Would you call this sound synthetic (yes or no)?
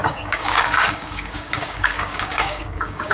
yes